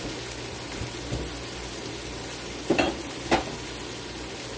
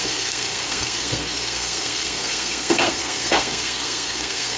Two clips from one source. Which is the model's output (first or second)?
second